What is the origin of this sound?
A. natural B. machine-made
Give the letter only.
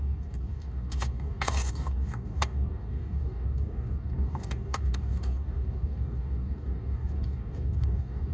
B